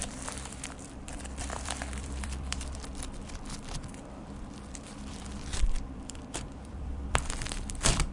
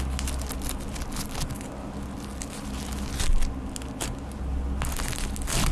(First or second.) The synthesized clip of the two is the first